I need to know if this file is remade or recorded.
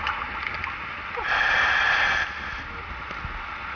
recorded